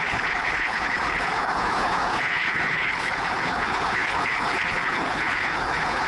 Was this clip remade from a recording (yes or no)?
yes